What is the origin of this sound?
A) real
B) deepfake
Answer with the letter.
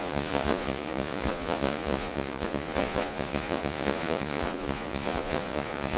B